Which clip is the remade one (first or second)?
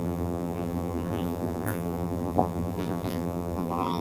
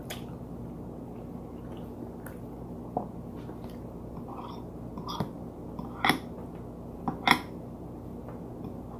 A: first